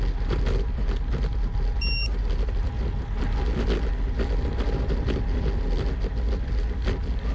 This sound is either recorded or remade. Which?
recorded